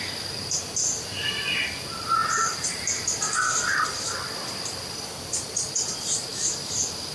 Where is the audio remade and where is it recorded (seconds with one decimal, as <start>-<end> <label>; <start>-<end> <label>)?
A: 0.0-7.1 recorded